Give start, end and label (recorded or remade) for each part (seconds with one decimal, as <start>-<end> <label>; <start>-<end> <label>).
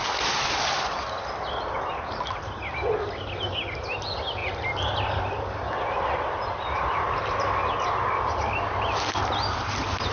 0.0-4.4 recorded; 4.4-5.3 remade; 5.3-10.1 recorded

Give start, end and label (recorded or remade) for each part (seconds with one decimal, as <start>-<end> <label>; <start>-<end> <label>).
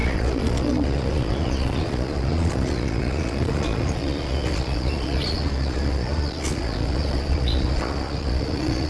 0.0-8.9 remade